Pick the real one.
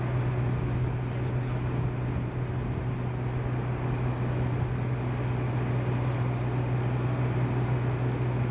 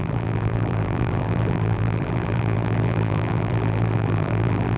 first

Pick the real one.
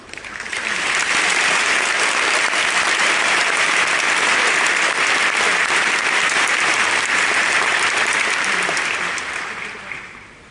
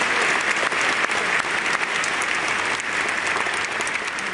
second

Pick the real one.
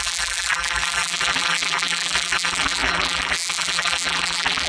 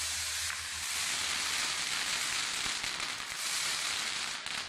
second